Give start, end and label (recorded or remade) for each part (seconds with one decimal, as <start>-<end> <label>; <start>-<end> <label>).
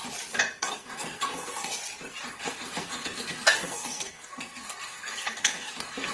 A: 0.0-0.6 recorded; 0.6-1.7 remade; 1.7-2.3 recorded; 2.3-6.1 remade